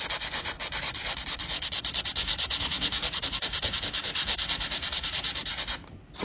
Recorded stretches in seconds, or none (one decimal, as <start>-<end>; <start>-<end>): 3.0-6.2